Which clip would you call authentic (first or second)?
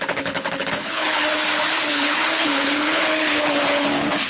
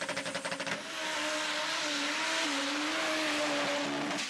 second